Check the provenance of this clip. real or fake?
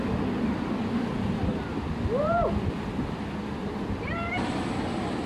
real